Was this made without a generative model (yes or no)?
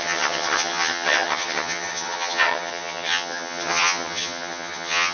no